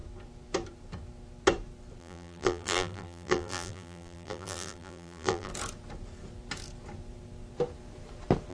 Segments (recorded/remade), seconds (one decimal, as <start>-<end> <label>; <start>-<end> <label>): 0.0-2.0 recorded; 2.0-5.5 remade; 5.5-8.5 recorded